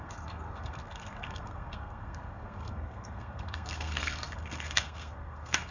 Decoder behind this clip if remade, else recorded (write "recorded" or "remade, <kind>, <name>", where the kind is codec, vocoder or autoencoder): remade, codec, SNAC